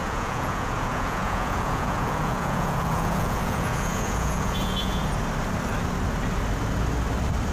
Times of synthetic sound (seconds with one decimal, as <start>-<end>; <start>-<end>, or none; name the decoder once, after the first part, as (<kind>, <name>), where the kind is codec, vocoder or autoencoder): 0.0-5.0 (vocoder, Vocos)